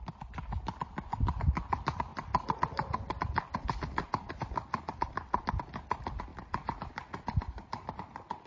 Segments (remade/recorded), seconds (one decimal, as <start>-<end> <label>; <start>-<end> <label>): 0.0-8.5 recorded